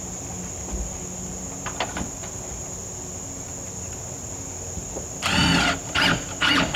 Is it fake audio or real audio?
real